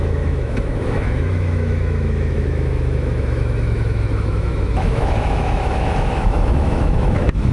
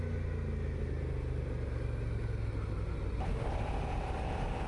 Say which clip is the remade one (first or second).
first